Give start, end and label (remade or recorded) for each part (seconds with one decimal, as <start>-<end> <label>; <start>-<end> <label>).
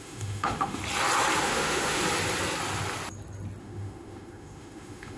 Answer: 0.0-0.8 remade; 0.8-1.4 recorded; 1.4-2.0 remade; 2.0-3.6 recorded; 3.6-5.2 remade